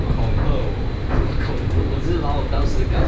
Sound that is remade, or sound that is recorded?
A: recorded